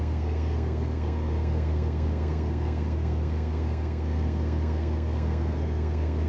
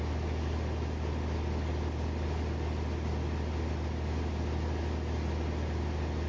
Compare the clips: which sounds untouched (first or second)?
second